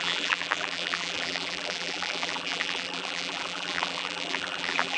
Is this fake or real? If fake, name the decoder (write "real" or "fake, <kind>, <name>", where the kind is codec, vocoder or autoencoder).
fake, vocoder, BigVGAN v2